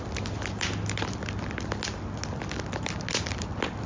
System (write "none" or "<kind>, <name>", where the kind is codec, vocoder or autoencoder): none